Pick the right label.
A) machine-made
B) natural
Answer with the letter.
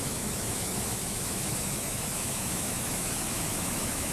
A